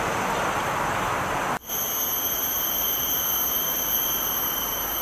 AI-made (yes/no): no